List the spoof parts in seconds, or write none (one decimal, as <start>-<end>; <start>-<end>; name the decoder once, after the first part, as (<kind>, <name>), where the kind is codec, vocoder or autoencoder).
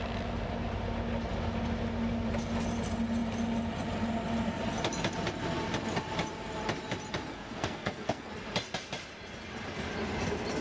7.3-8.3 (codec, SNAC)